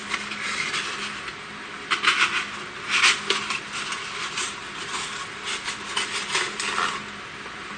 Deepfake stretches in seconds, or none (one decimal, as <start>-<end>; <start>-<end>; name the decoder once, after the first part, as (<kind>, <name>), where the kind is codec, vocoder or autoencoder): none